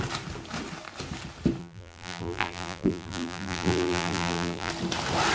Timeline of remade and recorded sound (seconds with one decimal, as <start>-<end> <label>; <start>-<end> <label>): 0.0-1.6 recorded; 1.6-4.7 remade; 4.7-5.3 recorded